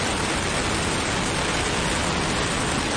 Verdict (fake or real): real